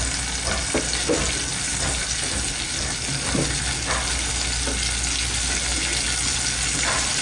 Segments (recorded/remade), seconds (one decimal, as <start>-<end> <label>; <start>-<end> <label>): 0.0-7.2 recorded